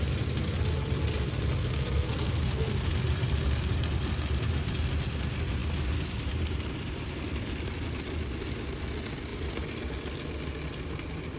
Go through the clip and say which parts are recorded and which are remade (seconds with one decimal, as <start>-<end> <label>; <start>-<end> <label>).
0.0-1.6 recorded; 1.6-2.9 remade; 2.9-11.4 recorded